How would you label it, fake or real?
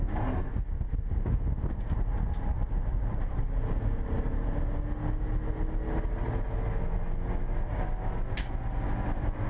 real